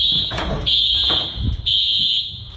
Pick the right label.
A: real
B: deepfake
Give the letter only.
B